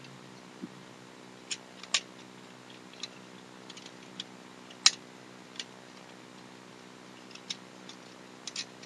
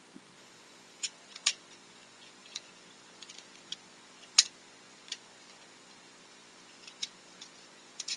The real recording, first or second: first